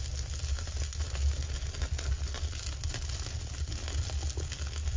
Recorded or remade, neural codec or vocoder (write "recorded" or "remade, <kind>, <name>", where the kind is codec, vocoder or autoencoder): recorded